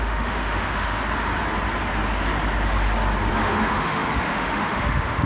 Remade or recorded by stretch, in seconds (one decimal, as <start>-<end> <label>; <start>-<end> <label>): 0.0-1.0 remade; 1.0-3.3 recorded; 3.3-5.3 remade

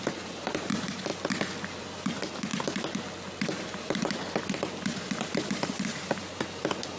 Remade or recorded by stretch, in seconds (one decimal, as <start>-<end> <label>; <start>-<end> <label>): 0.0-7.0 recorded